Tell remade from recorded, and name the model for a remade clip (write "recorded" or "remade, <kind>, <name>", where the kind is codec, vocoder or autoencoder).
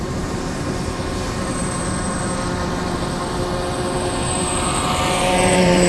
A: remade, vocoder, BigVGAN v2